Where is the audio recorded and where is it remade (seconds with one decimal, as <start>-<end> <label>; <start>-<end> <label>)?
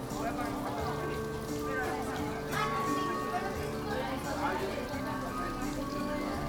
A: 0.0-5.9 recorded; 5.9-6.5 remade